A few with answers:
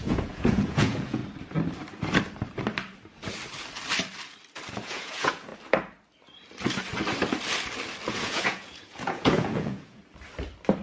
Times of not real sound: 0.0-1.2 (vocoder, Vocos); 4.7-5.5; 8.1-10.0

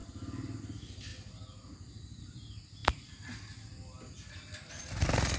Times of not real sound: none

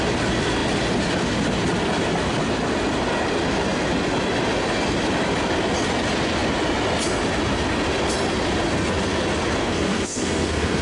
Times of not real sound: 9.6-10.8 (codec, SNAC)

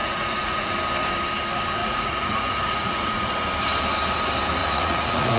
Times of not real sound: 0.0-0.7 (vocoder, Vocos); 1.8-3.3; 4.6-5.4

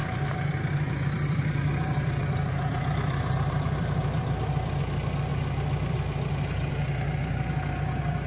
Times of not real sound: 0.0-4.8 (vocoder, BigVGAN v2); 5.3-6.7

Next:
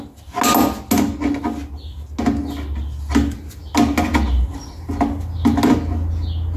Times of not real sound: none

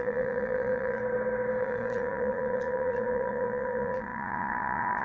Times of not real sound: 0.0-1.0 (vocoder, Vocos); 1.6-5.0